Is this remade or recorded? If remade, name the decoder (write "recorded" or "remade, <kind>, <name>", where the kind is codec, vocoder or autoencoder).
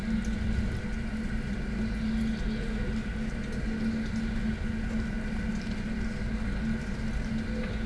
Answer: recorded